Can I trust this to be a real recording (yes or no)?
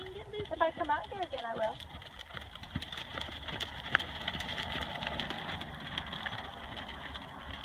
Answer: yes